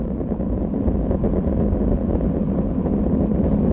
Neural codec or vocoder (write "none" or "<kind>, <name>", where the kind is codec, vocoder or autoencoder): none